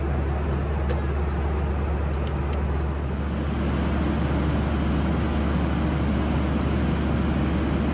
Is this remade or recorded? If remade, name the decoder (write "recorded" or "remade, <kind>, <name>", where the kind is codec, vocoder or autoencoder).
recorded